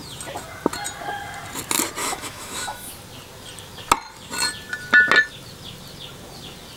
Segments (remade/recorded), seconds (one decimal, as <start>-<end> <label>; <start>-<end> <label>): 0.0-2.0 recorded; 2.0-2.9 remade; 2.9-6.8 recorded